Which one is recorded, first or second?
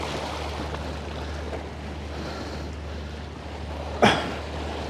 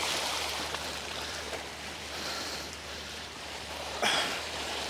first